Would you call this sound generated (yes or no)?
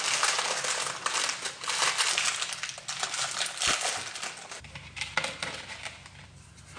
no